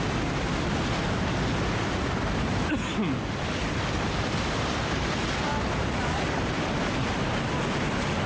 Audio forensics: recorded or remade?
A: recorded